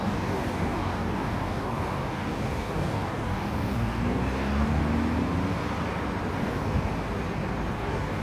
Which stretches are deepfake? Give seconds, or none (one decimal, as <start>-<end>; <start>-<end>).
0.0-4.8; 6.4-6.9; 7.7-8.2